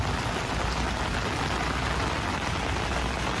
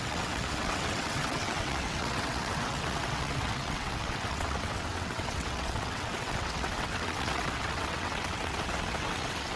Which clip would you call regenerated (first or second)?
second